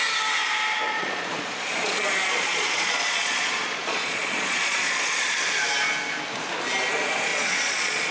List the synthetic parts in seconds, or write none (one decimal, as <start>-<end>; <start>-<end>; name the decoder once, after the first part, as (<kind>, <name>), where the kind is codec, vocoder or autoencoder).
0.9-5.6 (vocoder, Vocos); 7.3-8.1